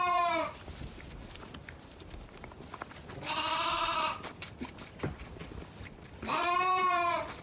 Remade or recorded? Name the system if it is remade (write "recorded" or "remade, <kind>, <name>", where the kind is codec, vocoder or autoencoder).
remade, vocoder, BigVGAN v2